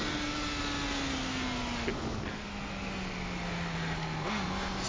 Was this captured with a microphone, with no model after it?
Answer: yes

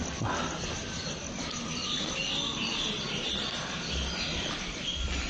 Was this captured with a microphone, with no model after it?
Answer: yes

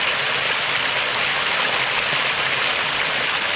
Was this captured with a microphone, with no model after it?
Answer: yes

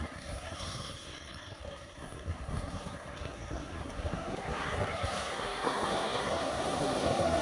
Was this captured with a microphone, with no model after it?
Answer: no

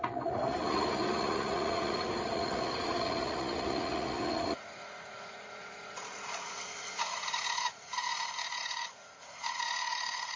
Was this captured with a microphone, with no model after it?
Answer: no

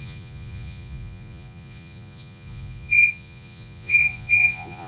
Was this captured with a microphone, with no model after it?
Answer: no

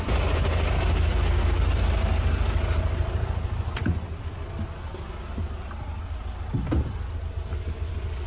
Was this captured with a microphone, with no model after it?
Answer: yes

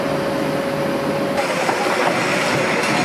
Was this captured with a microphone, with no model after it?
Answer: yes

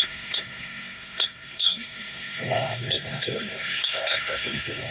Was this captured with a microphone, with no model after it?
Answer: no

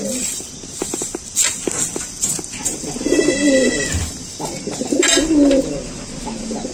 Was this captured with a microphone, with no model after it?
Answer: yes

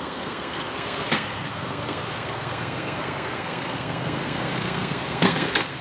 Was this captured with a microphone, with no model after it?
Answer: no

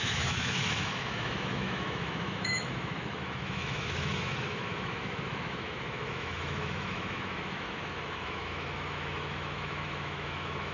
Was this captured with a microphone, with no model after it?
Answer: no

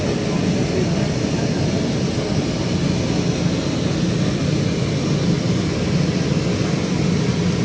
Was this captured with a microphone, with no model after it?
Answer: yes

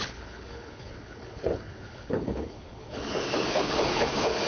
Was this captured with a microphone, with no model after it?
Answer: no